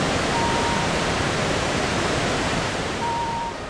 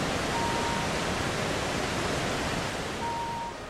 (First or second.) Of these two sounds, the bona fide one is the second